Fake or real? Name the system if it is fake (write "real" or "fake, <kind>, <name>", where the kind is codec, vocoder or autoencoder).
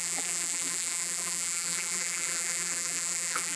fake, vocoder, BigVGAN v2